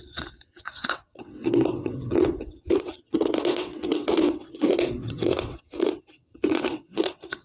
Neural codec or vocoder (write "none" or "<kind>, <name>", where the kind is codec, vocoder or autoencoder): vocoder, WaveNeXt